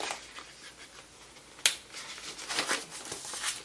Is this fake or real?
real